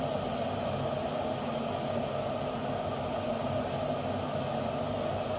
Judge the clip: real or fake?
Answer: real